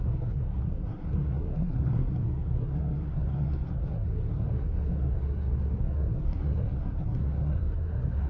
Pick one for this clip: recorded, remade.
remade